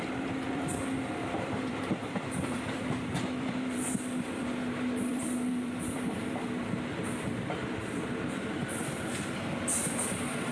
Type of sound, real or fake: fake